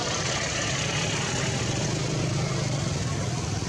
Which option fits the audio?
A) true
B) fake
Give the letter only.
A